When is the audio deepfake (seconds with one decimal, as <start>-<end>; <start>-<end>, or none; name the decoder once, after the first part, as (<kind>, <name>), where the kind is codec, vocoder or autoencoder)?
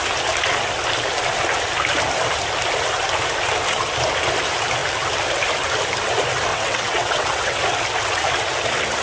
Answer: 6.5-7.6 (vocoder, WaveNeXt)